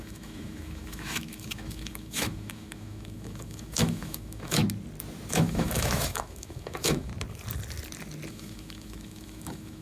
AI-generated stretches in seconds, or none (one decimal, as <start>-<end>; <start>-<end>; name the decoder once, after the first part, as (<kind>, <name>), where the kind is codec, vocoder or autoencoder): 0.0-4.6 (autoencoder, DAC-VAE); 5.3-7.1; 8.3-9.8